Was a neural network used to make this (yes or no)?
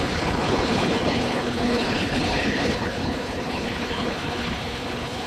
yes